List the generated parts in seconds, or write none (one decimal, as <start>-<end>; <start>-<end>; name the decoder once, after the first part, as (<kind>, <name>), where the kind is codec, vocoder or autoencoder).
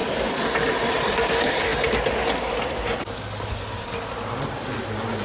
none